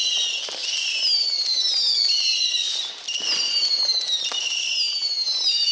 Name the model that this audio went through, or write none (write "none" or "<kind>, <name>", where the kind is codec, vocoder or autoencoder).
none